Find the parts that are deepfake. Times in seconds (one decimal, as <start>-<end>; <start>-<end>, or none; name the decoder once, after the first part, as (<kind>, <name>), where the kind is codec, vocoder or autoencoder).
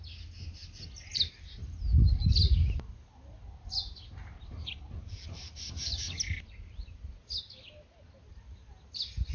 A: none